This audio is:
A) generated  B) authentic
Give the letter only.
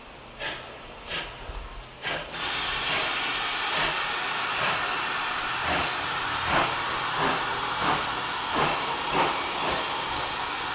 B